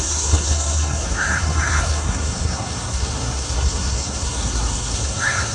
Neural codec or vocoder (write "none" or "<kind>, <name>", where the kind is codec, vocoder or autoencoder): codec, SNAC